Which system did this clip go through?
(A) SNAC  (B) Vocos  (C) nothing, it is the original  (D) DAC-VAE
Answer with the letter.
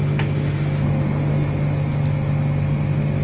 C